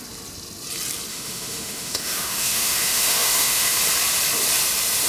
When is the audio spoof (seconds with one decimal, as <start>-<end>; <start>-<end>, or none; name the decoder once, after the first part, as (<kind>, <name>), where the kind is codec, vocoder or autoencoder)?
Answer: 1.1-3.8 (autoencoder, DAC-VAE)